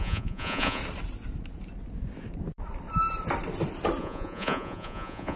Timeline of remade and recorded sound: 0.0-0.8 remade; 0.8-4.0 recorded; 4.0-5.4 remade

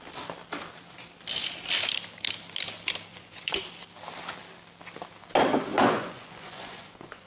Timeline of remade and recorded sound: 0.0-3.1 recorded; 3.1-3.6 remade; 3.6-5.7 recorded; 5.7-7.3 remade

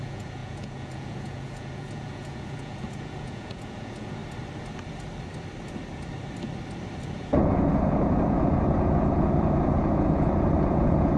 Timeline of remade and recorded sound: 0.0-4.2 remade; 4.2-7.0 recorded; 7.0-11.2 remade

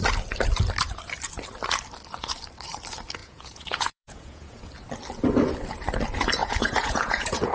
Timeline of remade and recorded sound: 0.0-3.2 recorded; 3.2-4.6 remade; 4.6-6.4 recorded; 6.4-7.5 remade

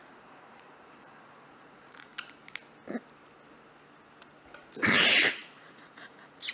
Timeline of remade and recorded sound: 0.0-2.1 remade; 2.1-5.3 recorded; 5.3-6.5 remade

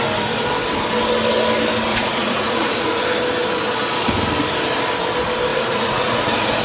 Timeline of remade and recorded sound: 0.0-1.9 recorded; 1.9-3.0 remade; 3.0-5.5 recorded; 5.5-6.6 remade